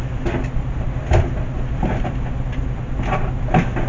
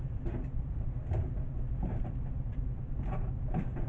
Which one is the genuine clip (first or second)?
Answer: first